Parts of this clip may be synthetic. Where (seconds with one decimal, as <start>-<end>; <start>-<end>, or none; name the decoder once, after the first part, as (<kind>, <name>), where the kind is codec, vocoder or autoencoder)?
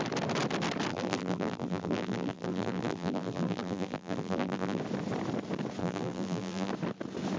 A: 0.9-4.8 (vocoder, BigVGAN v2); 5.8-6.7